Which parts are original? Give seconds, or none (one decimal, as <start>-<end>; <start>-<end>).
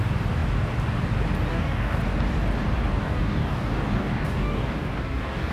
0.0-1.5; 2.0-2.9